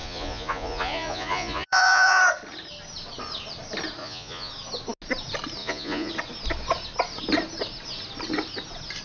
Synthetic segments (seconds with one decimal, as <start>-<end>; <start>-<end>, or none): 0.0-2.2; 4.0-4.5; 5.6-6.1